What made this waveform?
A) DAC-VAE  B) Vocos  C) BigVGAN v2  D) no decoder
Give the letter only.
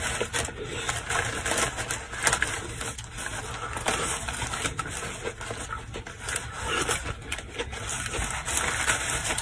D